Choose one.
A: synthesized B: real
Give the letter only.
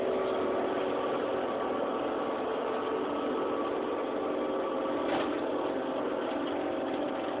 B